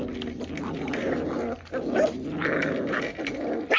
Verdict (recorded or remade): recorded